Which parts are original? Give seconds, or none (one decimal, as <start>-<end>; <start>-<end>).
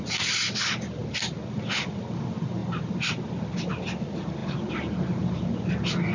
0.0-4.4; 5.3-6.1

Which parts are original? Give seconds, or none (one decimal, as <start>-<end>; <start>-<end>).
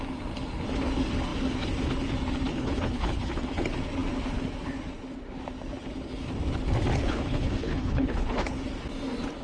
0.0-2.5; 3.3-7.0; 8.6-9.4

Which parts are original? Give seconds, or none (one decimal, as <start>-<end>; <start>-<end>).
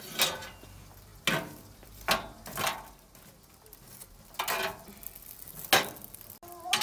0.0-6.8